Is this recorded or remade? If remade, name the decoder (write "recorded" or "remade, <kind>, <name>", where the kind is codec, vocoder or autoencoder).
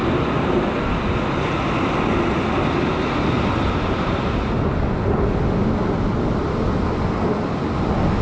recorded